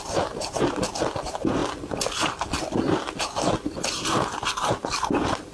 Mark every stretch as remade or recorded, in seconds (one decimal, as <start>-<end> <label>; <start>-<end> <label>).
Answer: 0.0-5.5 recorded